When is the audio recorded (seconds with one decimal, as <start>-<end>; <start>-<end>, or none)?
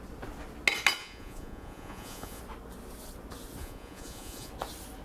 0.0-1.0; 2.4-3.6; 4.5-5.0